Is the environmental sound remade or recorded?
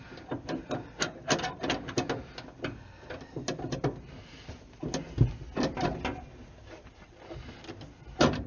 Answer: recorded